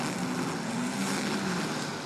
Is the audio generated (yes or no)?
no